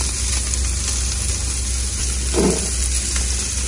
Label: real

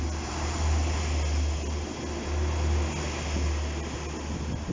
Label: real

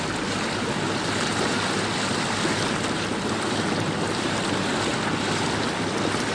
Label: real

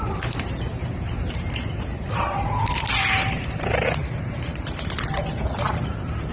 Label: fake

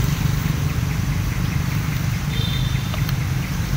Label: fake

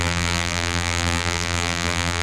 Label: fake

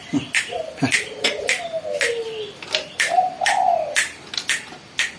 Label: real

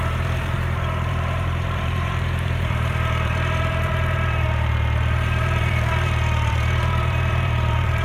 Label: fake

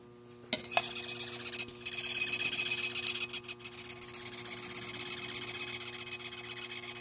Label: real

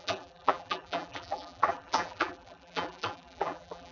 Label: fake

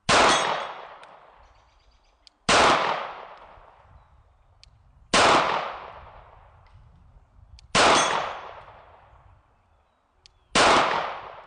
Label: real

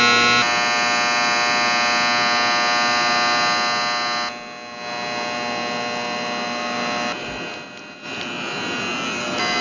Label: real